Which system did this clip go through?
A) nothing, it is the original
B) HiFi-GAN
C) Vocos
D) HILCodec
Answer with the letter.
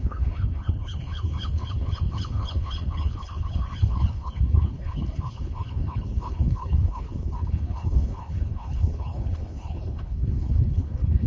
D